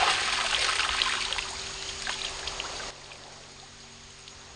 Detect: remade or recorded recorded